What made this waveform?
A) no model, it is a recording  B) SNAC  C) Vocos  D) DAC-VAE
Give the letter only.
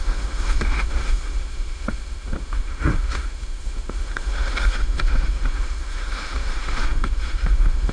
D